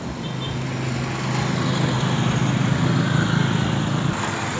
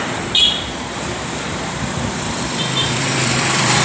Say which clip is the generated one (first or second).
second